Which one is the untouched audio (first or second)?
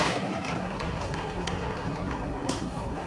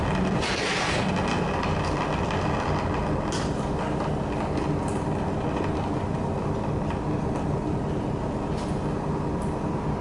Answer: second